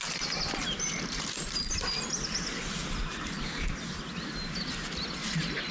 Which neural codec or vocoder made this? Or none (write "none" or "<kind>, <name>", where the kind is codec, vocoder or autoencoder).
none